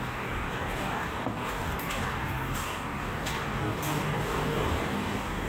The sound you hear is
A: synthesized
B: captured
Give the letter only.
A